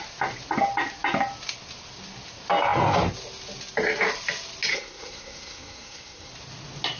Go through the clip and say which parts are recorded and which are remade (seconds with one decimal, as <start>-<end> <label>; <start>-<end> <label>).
0.0-4.7 recorded; 4.7-6.3 remade; 6.3-7.0 recorded